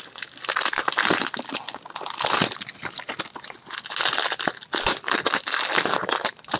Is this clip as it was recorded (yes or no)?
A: yes